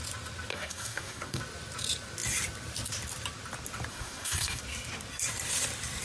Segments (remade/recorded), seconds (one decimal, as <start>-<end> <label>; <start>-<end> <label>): 0.0-0.5 recorded; 0.5-1.4 remade; 1.4-3.9 recorded; 3.9-4.6 remade; 4.6-6.0 recorded